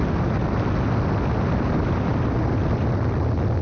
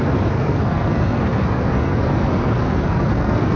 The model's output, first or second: second